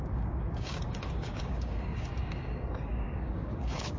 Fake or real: fake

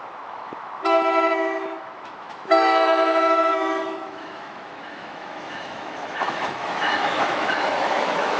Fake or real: fake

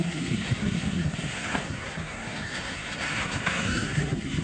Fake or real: fake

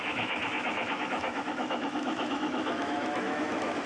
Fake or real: fake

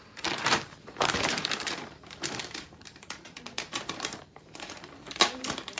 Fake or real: fake